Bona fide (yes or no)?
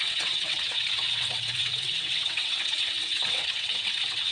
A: no